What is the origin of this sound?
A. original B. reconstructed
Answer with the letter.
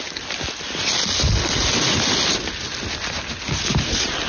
A